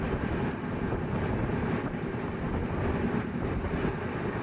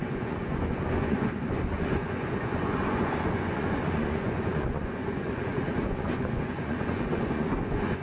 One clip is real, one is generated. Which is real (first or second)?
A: first